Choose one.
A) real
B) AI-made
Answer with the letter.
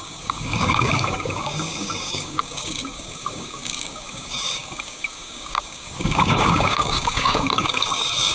B